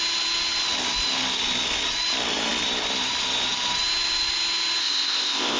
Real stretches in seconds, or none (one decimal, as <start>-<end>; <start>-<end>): 0.0-4.8